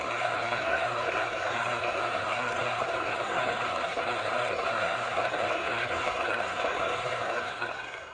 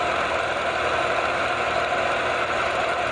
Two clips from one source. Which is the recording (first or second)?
second